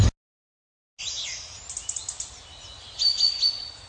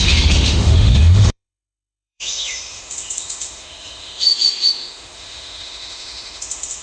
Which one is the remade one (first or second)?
second